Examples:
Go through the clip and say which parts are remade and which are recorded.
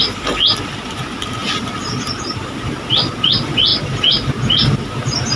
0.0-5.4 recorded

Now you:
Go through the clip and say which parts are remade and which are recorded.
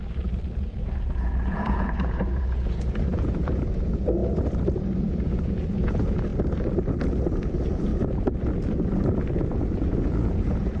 0.0-0.6 recorded; 0.6-4.2 remade; 4.2-5.0 recorded; 5.0-6.3 remade; 6.3-7.4 recorded; 7.4-7.9 remade; 7.9-9.3 recorded; 9.3-10.8 remade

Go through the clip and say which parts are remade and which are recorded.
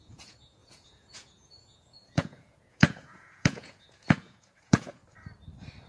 0.0-5.0 remade; 5.0-5.9 recorded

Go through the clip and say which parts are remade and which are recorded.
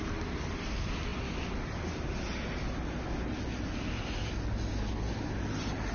0.0-5.9 recorded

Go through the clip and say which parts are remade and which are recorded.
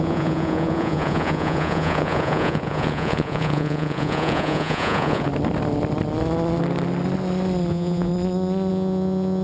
0.0-5.3 remade; 5.3-7.7 recorded; 7.7-8.1 remade; 8.1-8.7 recorded; 8.7-9.4 remade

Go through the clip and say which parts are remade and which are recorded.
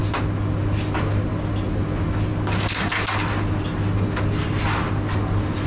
0.0-5.7 recorded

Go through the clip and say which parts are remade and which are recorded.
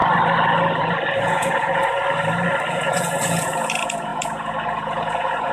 0.0-1.2 recorded; 1.2-1.8 remade; 1.8-2.7 recorded; 2.7-5.5 remade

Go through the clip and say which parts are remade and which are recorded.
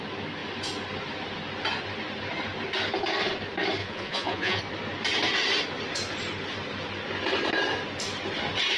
0.0-3.8 recorded; 3.8-4.6 remade; 4.6-8.8 recorded